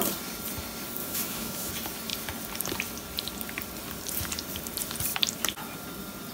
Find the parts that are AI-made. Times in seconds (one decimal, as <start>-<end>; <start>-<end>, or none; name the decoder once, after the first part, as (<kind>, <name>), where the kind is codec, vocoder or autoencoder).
1.0-1.7 (autoencoder, DAC-VAE)